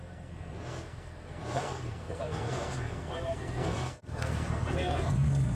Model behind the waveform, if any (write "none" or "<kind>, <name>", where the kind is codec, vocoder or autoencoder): codec, SNAC